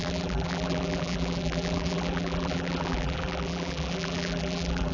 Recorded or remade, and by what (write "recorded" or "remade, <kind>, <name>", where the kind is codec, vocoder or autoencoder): remade, vocoder, BigVGAN v2